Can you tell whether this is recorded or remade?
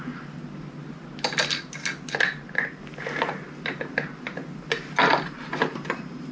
recorded